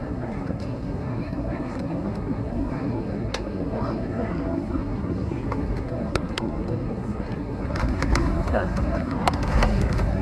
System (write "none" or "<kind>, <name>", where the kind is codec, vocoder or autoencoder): codec, SNAC